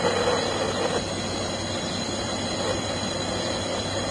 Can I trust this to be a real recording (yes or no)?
yes